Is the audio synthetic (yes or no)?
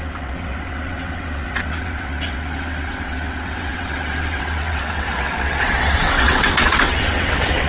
yes